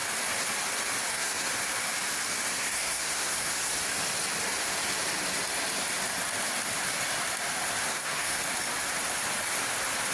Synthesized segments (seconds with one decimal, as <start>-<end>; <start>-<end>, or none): 1.1-1.5; 2.5-3.7; 7.8-8.4